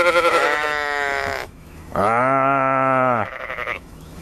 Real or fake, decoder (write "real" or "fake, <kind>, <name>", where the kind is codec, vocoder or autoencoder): fake, autoencoder, DAC-VAE